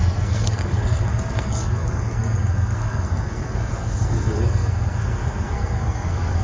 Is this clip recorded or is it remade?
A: remade